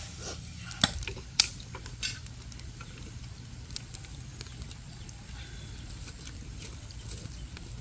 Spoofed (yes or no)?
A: no